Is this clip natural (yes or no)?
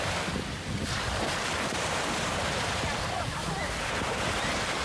no